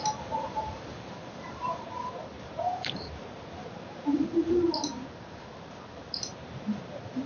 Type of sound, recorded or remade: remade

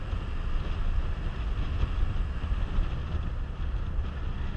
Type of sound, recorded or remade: recorded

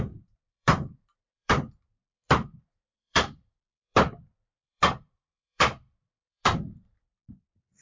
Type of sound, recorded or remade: remade